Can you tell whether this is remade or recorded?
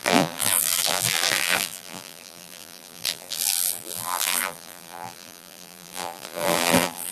remade